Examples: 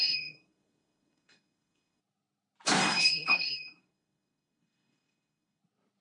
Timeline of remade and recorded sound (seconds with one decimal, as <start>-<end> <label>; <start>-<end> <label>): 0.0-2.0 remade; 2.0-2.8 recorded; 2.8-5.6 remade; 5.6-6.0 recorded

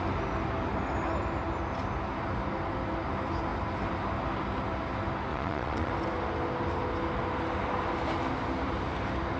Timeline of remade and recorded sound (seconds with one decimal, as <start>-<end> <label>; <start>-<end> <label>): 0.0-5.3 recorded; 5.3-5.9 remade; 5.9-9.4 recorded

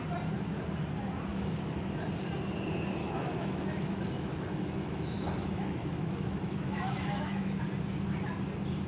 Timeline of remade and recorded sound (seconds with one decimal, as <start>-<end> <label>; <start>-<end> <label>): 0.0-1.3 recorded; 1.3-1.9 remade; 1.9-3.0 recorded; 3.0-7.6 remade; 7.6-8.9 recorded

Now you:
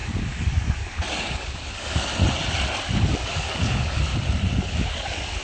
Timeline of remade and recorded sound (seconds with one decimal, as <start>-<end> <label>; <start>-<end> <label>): 0.0-2.1 remade; 2.1-3.1 recorded; 3.1-4.1 remade; 4.1-4.6 recorded; 4.6-5.4 remade

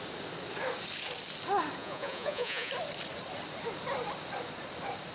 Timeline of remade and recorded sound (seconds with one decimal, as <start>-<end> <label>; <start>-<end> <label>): 0.0-1.8 recorded; 1.8-2.7 remade; 2.7-5.1 recorded